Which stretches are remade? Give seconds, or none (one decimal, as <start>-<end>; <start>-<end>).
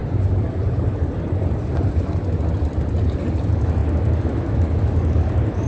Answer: 3.4-5.7